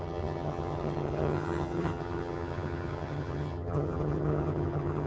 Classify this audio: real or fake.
fake